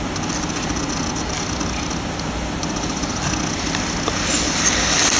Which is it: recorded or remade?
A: recorded